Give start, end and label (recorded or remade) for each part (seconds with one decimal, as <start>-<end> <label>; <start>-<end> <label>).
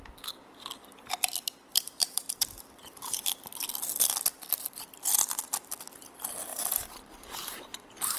0.0-1.7 recorded; 1.7-3.2 remade; 3.2-6.5 recorded; 6.5-8.2 remade